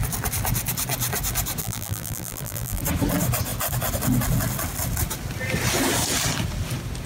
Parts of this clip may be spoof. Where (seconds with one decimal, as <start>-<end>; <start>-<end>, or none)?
1.6-2.8